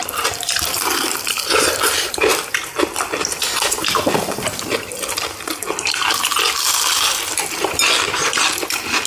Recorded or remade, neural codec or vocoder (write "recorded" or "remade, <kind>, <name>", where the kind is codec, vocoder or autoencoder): recorded